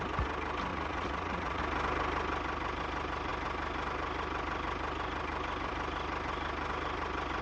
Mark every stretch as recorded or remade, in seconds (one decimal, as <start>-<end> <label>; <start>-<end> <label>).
0.0-0.7 recorded; 0.7-1.6 remade; 1.6-7.4 recorded